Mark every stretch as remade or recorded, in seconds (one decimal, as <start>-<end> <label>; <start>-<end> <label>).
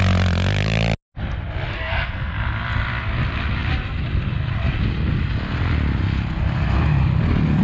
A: 0.0-1.7 recorded; 1.7-2.3 remade; 2.3-7.6 recorded